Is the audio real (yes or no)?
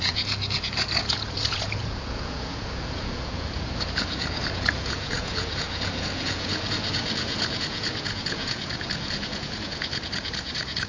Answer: no